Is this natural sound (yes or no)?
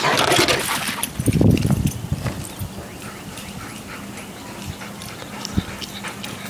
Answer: yes